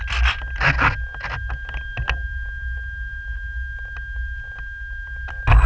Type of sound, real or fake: real